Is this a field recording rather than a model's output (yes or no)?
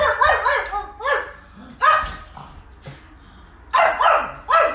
yes